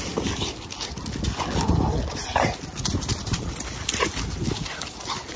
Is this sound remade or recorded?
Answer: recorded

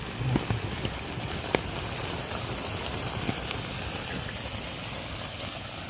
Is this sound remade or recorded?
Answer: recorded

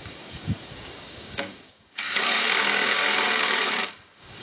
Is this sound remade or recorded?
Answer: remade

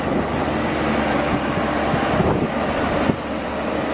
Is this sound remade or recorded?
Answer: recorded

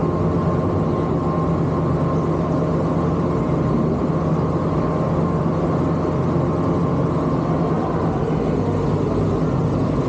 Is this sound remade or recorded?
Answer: recorded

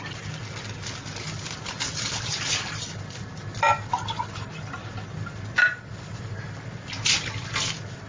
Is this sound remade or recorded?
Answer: recorded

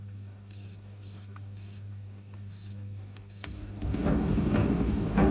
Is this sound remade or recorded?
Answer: remade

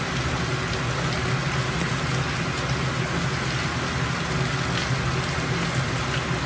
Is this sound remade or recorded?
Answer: recorded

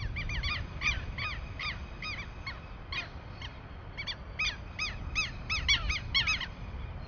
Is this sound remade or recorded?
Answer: recorded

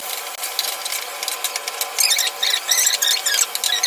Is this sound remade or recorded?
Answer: recorded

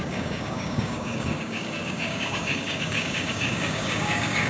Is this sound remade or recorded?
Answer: remade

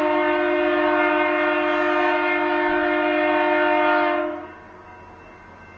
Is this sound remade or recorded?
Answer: recorded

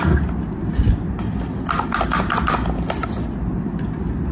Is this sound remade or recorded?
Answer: recorded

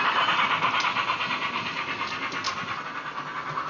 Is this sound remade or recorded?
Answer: recorded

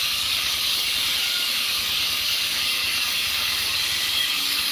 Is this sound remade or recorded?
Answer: remade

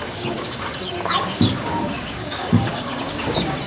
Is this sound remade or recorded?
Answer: remade